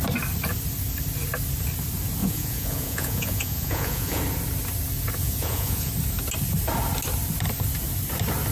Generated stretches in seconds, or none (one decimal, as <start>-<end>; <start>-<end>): 2.2-4.2; 5.2-5.9